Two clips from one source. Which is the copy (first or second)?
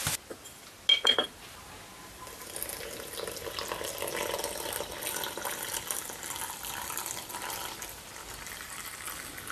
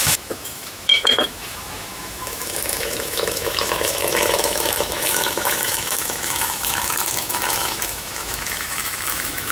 second